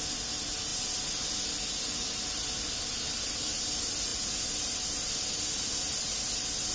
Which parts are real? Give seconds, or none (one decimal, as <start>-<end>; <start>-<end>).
0.0-6.7